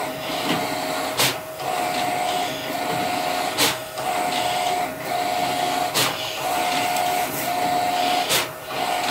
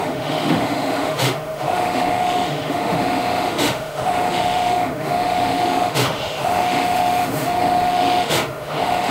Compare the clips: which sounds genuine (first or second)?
first